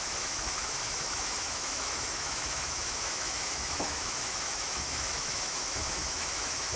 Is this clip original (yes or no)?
no